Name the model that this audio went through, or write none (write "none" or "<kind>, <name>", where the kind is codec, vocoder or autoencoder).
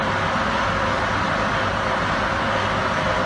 none